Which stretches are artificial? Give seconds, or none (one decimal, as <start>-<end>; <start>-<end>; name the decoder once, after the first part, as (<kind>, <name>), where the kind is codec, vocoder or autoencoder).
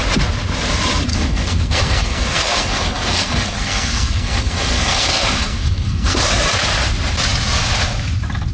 1.1-6.2 (codec, SNAC)